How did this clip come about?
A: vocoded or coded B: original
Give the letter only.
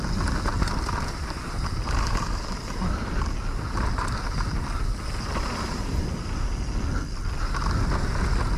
B